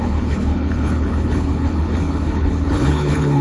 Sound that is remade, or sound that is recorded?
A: remade